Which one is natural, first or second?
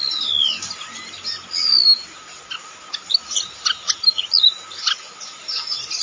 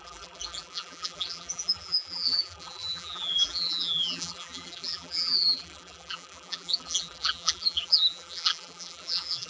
first